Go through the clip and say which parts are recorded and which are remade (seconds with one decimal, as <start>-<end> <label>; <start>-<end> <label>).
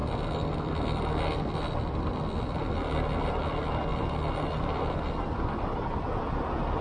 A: 0.0-6.8 recorded